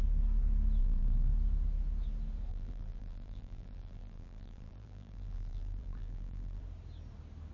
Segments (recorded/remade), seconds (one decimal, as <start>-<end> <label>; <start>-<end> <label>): 0.0-0.8 recorded; 0.8-1.3 remade; 1.3-2.5 recorded; 2.5-6.6 remade; 6.6-7.5 recorded